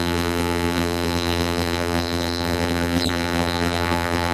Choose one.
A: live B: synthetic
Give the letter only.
B